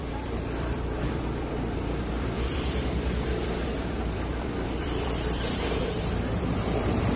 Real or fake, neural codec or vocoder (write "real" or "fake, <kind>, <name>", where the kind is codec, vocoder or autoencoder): fake, vocoder, BigVGAN v2